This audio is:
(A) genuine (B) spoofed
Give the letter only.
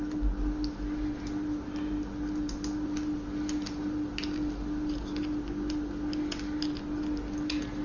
A